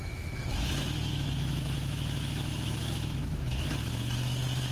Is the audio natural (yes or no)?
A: no